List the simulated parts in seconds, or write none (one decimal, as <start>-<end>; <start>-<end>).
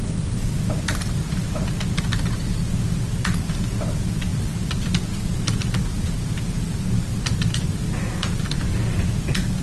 none